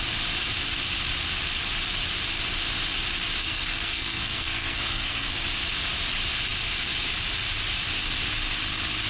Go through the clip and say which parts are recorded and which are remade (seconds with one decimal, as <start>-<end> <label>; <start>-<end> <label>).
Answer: 0.0-3.4 recorded; 3.4-5.3 remade; 5.3-9.1 recorded